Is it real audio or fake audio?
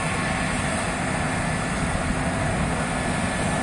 real